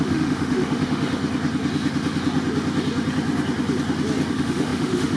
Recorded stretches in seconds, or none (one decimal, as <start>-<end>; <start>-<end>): 1.2-4.3